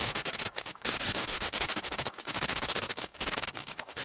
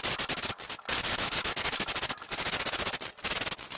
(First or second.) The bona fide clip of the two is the second